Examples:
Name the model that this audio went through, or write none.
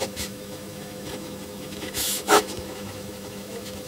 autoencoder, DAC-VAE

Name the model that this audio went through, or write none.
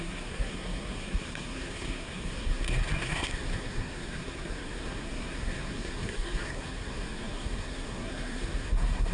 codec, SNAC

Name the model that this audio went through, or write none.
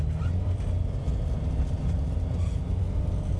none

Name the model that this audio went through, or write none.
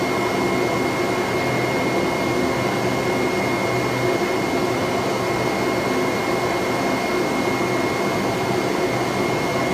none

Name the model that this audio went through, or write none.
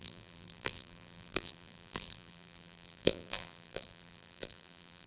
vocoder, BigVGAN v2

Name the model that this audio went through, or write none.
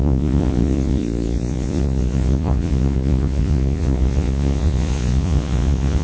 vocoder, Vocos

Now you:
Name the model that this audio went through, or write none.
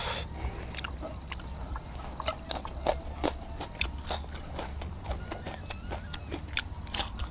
none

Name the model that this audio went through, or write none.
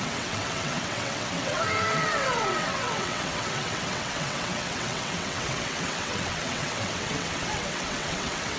vocoder, WaveNeXt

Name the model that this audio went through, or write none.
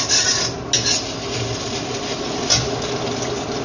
none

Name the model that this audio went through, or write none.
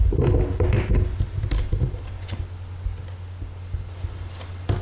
none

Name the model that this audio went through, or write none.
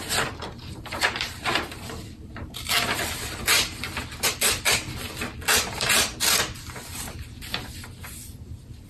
vocoder, BigVGAN v2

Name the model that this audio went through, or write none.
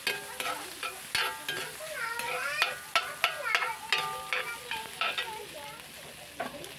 none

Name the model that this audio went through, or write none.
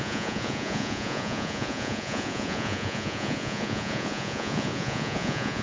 vocoder, Vocos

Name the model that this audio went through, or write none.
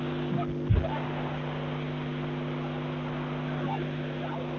none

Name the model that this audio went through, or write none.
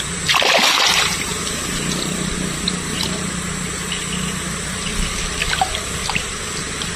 none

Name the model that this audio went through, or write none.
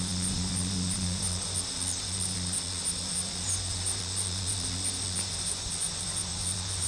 vocoder, Vocos